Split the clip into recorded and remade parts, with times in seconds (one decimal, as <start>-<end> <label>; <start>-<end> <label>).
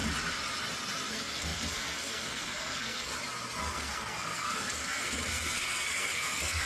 0.0-1.1 recorded; 1.1-3.1 remade; 3.1-3.6 recorded; 3.6-6.7 remade